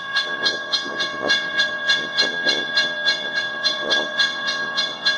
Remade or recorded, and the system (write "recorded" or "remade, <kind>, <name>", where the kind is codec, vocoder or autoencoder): remade, vocoder, WaveNeXt